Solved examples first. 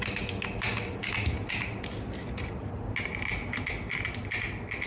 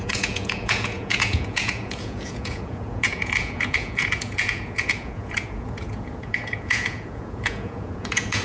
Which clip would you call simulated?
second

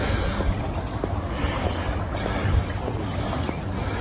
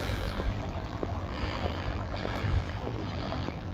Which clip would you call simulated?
second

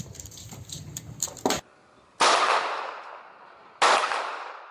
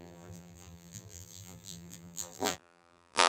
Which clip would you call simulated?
second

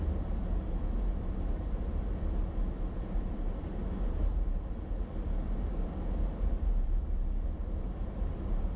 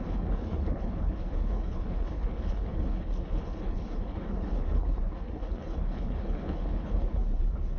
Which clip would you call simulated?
second